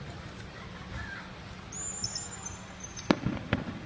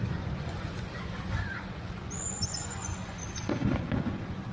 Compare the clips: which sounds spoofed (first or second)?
second